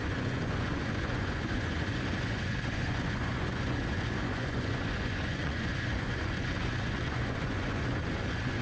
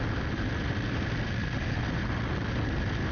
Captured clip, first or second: second